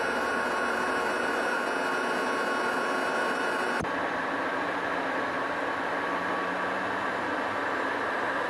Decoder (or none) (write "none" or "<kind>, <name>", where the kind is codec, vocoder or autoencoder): none